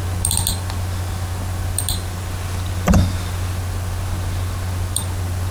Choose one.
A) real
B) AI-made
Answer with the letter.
A